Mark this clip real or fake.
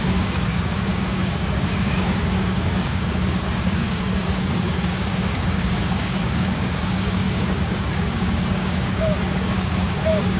fake